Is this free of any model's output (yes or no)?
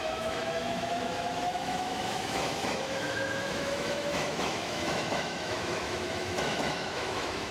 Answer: no